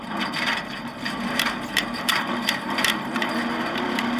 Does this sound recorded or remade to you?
remade